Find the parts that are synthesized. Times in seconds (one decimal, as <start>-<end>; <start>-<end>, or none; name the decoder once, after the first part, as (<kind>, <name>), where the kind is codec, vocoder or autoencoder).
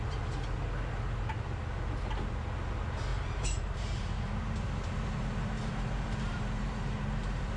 3.1-7.6 (vocoder, BigVGAN v2)